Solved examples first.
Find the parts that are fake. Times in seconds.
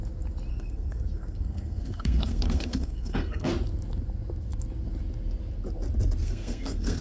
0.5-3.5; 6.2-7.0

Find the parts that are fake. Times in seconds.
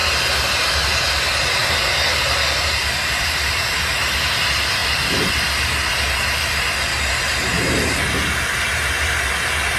0.0-0.9; 1.6-4.2; 6.9-8.4